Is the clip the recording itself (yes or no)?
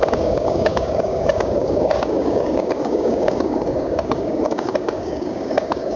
no